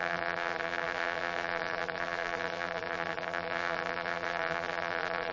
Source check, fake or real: fake